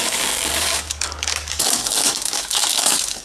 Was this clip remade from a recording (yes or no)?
yes